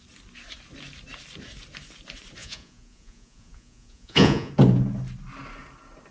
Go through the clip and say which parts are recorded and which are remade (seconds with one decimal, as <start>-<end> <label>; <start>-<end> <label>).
0.0-2.4 recorded; 2.4-4.5 remade; 4.5-6.1 recorded